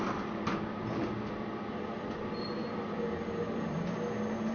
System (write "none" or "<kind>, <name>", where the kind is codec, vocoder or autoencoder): none